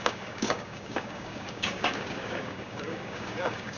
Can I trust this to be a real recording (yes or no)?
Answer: no